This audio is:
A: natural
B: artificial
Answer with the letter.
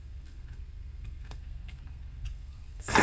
B